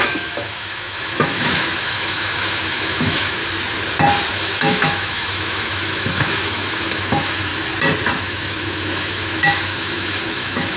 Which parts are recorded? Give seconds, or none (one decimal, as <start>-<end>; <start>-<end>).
3.4-4.3; 7.5-8.2